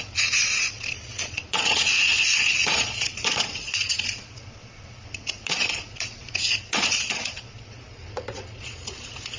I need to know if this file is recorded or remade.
remade